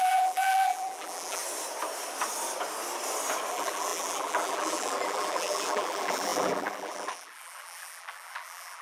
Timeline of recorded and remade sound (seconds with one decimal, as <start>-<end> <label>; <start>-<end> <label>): 0.0-1.4 remade; 1.4-3.5 recorded; 3.5-8.8 remade